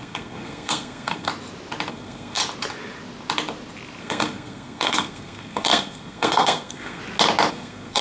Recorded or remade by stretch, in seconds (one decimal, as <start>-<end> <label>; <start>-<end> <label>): 0.0-1.3 remade; 1.3-1.9 recorded; 1.9-2.4 remade; 2.4-4.0 recorded; 4.0-7.0 remade; 7.0-7.5 recorded; 7.5-8.0 remade